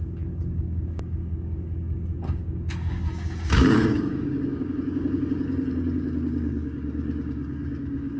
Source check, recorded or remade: remade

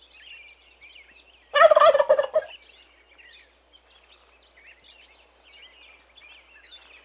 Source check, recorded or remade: recorded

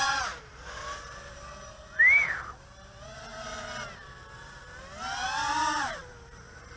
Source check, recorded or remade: recorded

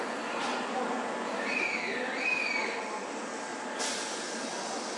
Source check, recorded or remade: recorded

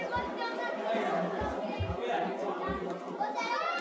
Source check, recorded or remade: recorded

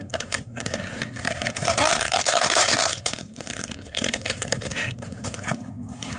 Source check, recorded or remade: remade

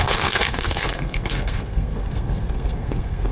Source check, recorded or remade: remade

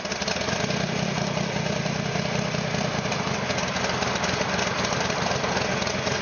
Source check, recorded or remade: recorded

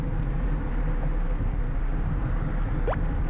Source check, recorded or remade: recorded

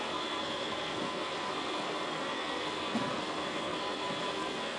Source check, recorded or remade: remade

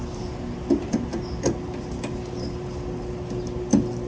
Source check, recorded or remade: recorded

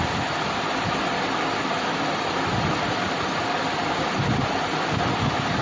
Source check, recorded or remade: recorded